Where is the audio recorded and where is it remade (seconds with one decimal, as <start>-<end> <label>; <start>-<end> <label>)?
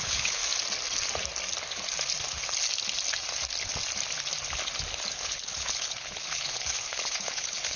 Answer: 0.0-0.4 remade; 0.4-5.1 recorded; 5.1-7.8 remade